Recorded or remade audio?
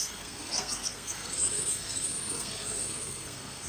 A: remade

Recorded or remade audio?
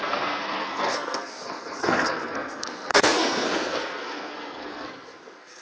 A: remade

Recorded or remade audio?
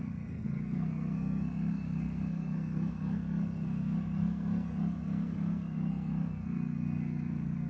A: remade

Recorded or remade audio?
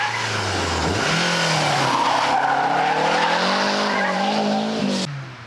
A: recorded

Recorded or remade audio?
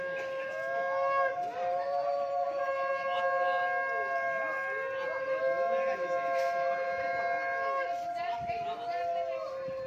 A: recorded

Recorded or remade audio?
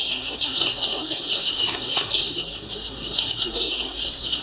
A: remade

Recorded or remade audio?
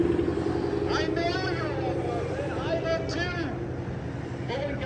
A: recorded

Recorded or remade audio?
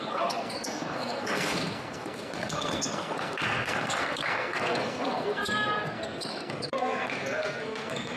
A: remade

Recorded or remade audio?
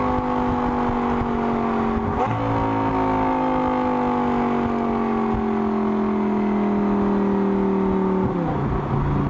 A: recorded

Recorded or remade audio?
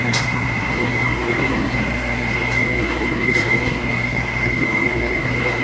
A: remade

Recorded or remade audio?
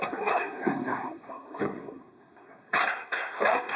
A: remade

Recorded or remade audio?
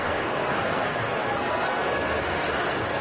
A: remade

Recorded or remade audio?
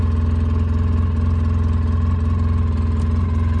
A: recorded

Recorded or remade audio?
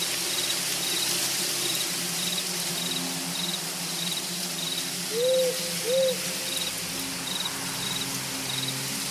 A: recorded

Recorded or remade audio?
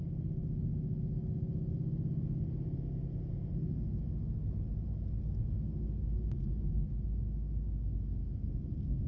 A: recorded